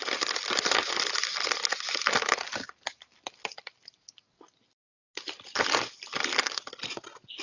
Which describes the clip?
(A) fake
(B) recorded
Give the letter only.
B